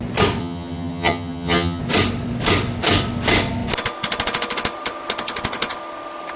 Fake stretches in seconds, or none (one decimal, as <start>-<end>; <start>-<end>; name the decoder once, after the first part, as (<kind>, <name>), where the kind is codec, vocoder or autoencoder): 0.4-1.8 (vocoder, HiFi-GAN)